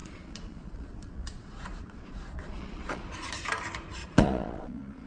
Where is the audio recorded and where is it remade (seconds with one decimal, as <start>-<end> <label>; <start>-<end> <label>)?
0.0-3.1 remade; 3.1-4.0 recorded; 4.0-5.1 remade

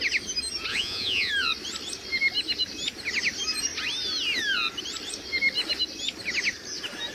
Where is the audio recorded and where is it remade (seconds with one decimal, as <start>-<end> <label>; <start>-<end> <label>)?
0.0-0.7 recorded; 0.7-1.3 remade; 1.3-7.1 recorded